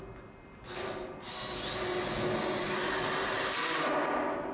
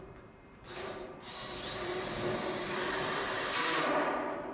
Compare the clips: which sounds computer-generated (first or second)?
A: second